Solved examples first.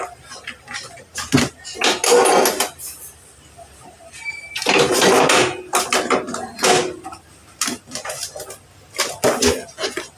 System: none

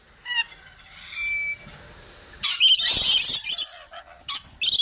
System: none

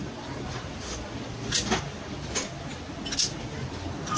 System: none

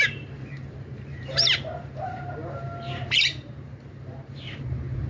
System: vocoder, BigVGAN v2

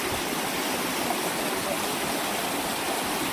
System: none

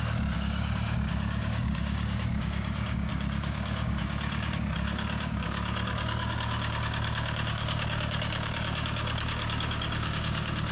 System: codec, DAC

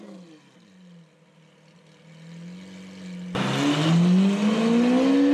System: none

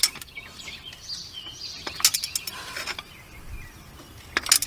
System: none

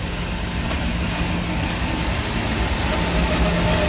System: none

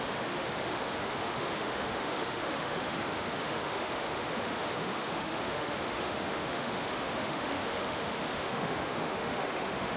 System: autoencoder, DAC-VAE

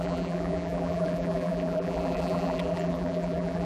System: vocoder, BigVGAN v2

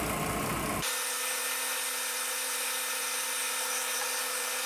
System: none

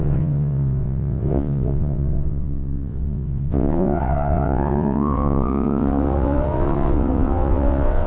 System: vocoder, WaveNeXt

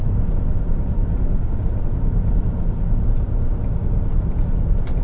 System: vocoder, BigVGAN v2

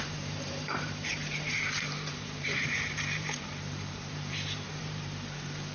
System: vocoder, BigVGAN v2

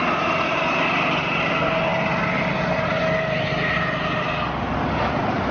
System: none